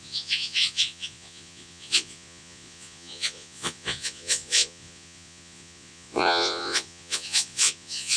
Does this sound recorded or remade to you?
remade